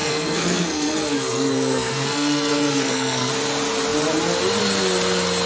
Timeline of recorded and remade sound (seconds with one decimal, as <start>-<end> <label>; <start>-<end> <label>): 0.0-3.3 remade; 3.3-5.5 recorded